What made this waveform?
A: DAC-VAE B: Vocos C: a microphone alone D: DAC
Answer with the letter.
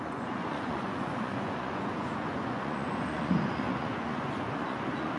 B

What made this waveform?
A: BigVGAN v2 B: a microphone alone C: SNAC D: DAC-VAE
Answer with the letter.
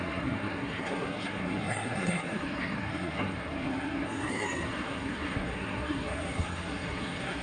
C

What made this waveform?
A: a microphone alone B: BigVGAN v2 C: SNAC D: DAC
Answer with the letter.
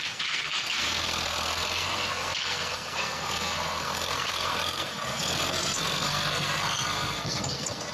C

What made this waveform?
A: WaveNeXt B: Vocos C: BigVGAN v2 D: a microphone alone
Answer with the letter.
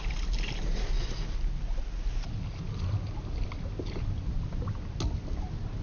D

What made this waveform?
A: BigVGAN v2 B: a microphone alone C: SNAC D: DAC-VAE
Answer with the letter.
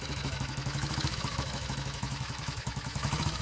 D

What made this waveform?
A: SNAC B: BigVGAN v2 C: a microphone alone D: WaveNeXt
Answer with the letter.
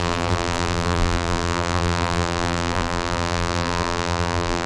B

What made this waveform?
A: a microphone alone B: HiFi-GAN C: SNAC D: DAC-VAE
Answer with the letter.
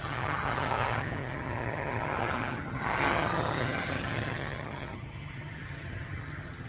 B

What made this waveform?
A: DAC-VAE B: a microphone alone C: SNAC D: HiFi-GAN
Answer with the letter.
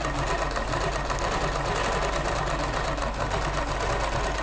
B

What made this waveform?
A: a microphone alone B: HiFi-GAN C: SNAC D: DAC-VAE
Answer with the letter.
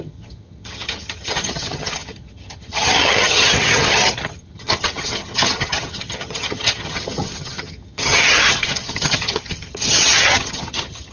B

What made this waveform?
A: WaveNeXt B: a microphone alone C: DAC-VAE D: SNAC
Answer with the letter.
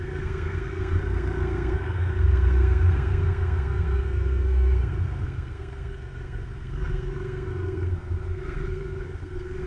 D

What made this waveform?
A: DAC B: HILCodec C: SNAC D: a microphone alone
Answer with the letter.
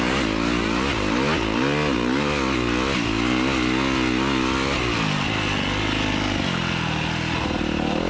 D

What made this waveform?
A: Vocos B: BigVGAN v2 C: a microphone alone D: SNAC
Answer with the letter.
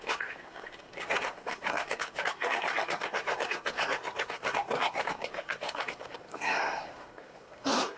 D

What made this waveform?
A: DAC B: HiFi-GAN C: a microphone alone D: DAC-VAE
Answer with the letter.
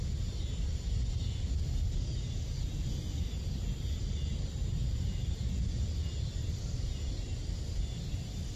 C